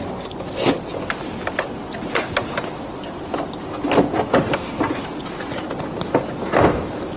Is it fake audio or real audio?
real